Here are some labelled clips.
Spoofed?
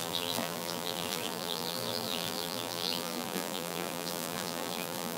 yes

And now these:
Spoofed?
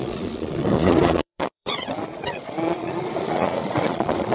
yes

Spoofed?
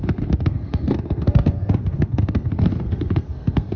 yes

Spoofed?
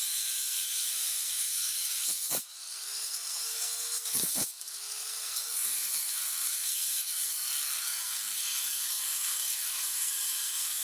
yes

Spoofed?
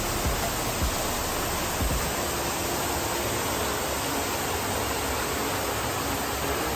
no